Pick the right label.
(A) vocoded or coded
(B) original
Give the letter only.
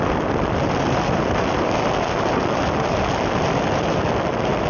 B